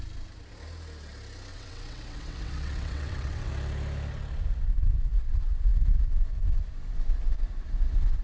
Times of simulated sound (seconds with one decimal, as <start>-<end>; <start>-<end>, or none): 1.5-3.5

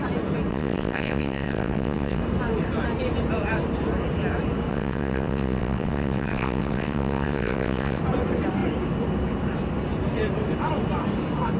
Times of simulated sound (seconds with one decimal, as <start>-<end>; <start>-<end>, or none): 0.5-2.2; 4.7-8.0

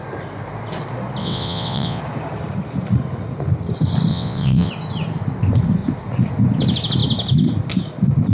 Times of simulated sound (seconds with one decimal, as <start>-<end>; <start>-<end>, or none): 1.2-2.0; 4.1-4.7

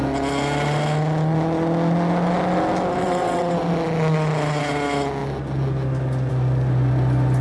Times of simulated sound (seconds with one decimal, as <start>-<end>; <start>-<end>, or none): 3.0-3.5

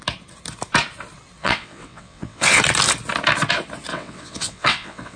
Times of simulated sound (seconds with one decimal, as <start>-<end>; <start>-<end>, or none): 1.4-2.6; 3.9-5.2